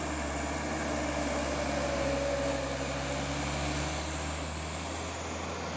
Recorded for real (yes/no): yes